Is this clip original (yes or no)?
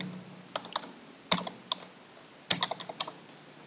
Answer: yes